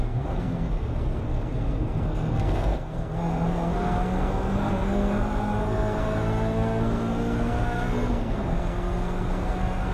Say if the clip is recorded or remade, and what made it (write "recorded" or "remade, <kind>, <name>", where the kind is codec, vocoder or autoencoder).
remade, codec, SNAC